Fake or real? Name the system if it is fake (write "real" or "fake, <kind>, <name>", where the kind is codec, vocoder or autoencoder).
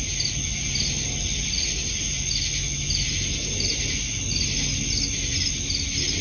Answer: real